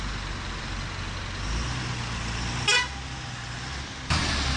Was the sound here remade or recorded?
recorded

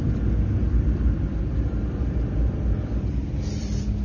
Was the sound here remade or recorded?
remade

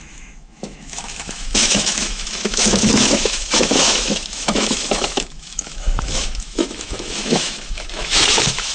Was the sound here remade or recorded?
remade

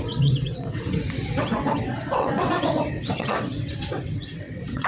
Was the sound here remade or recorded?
remade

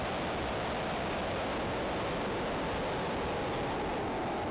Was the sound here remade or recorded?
recorded